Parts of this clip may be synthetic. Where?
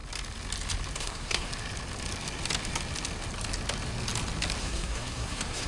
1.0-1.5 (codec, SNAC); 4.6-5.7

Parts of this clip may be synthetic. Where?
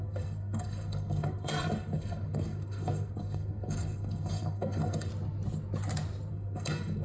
0.0-5.1 (codec, SNAC); 6.3-7.0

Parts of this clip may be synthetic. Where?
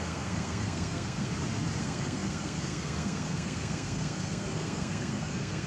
0.0-1.3 (codec, SNAC); 1.8-5.7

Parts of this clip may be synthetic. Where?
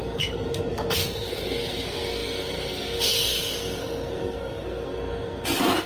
0.0-5.9 (codec, SNAC)